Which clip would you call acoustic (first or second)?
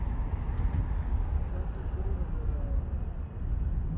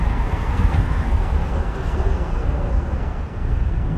first